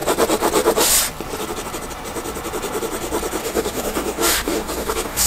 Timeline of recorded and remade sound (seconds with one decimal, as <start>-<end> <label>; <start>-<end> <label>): 0.0-3.4 recorded; 3.4-5.3 remade